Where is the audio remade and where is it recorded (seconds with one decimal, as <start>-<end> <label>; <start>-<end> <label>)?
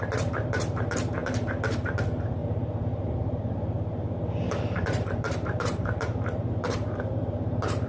0.0-2.4 remade; 2.4-3.1 recorded; 3.1-7.9 remade